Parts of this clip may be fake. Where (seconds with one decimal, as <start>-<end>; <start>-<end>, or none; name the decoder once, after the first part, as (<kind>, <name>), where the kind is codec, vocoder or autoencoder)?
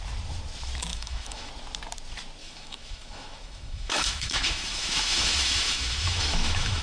0.9-1.5 (autoencoder, DAC-VAE); 2.4-6.8